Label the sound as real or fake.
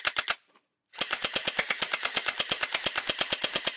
real